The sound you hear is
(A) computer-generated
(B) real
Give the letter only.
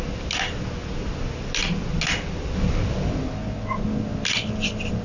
B